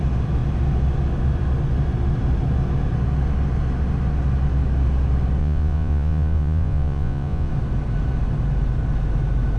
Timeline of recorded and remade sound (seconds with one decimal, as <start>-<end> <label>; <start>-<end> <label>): 0.0-5.4 recorded; 5.4-7.5 remade; 7.5-9.6 recorded